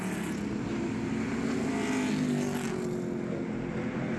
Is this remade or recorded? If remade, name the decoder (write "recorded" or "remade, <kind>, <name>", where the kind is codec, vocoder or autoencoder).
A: recorded